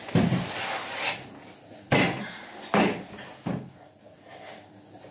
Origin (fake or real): real